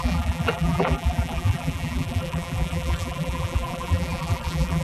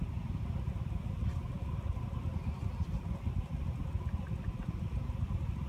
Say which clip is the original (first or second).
second